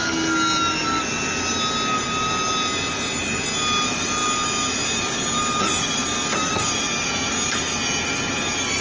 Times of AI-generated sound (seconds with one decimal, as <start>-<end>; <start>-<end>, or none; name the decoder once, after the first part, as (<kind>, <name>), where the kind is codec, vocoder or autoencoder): none